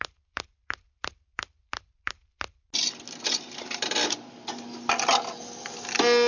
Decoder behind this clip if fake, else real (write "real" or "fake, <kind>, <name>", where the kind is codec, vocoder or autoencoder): real